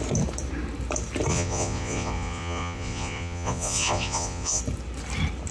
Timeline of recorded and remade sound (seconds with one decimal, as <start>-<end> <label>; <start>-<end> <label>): 0.0-1.3 recorded; 1.3-4.6 remade; 4.6-5.5 recorded